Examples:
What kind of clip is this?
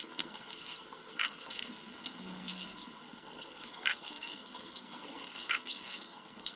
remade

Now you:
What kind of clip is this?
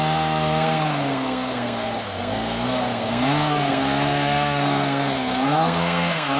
remade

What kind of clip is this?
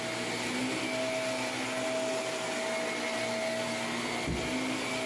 recorded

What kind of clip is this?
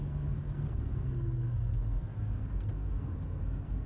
remade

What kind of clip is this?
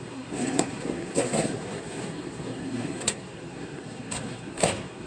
remade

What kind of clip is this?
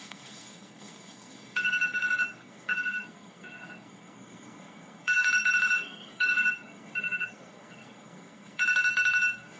remade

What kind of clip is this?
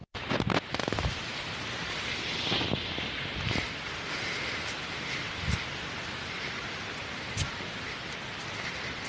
recorded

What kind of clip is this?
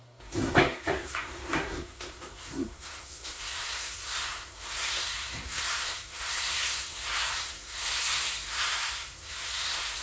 remade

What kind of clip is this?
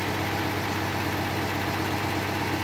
recorded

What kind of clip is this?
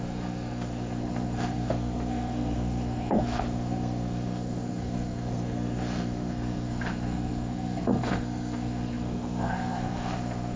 remade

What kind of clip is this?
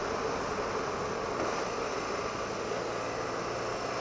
recorded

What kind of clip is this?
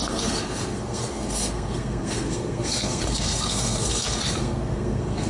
remade